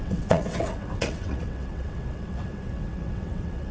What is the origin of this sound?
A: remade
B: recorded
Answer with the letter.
A